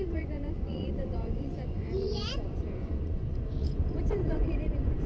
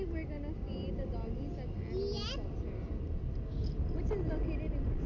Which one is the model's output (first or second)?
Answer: first